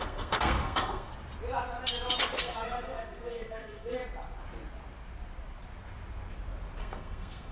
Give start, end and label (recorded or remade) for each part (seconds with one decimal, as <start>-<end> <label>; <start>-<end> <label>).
0.0-1.1 remade; 1.1-2.4 recorded; 2.4-4.0 remade; 4.0-6.8 recorded; 6.8-7.5 remade